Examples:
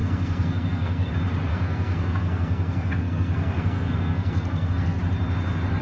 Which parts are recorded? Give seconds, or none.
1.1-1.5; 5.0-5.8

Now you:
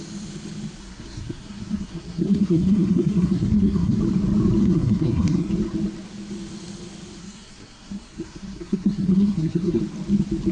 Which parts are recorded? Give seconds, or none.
0.0-0.8; 4.0-4.6; 5.5-7.2; 9.8-10.5

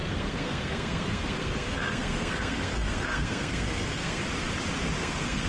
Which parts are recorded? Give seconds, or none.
4.2-5.0

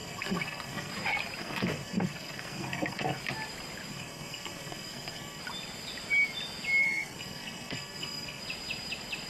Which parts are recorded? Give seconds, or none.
0.9-1.4; 3.2-3.9; 5.4-6.8; 8.4-9.3

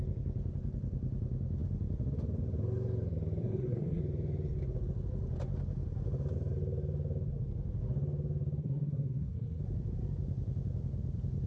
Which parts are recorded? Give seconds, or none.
0.0-3.4; 4.0-8.6; 9.6-11.5

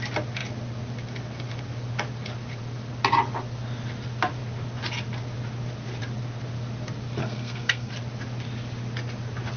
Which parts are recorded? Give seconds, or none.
0.0-7.2; 7.9-9.6

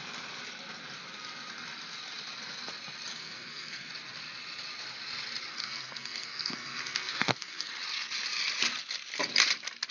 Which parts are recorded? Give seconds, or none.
0.0-3.1; 3.9-5.5; 7.7-9.9